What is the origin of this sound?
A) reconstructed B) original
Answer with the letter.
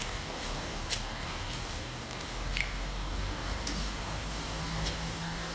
A